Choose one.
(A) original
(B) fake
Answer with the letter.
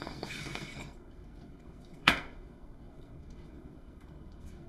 B